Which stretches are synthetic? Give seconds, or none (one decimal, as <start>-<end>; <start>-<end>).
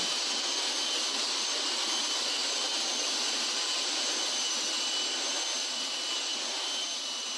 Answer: 2.7-4.5